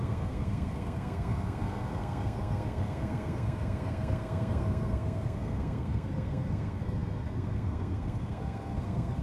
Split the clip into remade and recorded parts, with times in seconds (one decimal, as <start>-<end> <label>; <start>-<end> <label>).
0.0-9.2 remade